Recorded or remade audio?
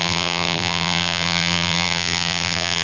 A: remade